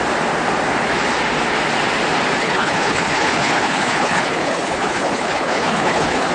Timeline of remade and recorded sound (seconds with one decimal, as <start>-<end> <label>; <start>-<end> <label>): 0.0-2.4 recorded; 2.4-6.3 remade